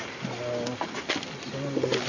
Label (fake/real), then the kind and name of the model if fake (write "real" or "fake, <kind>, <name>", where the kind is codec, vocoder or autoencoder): real